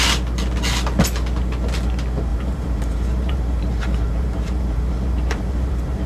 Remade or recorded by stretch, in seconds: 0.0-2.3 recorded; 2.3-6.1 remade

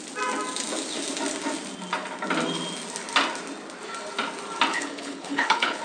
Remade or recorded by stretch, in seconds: 0.0-4.7 recorded; 4.7-5.8 remade

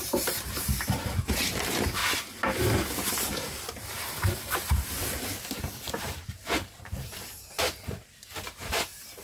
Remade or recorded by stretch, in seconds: 0.0-2.0 remade; 2.0-3.3 recorded; 3.3-5.0 remade; 5.0-5.5 recorded; 5.5-9.2 remade

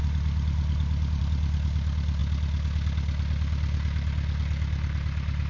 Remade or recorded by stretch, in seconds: 0.0-5.5 recorded

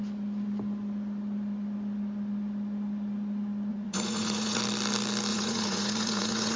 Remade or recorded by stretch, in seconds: 0.0-3.7 recorded; 3.7-4.6 remade; 4.6-5.3 recorded; 5.3-6.6 remade